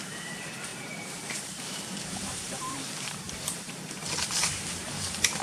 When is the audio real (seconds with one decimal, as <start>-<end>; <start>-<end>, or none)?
0.0-0.7; 3.9-5.4